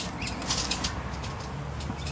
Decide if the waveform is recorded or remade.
recorded